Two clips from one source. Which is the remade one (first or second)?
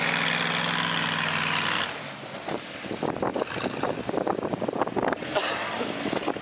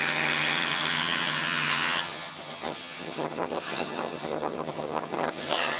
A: second